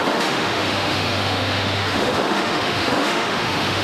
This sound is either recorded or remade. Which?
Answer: remade